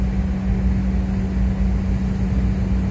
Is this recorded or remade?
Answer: recorded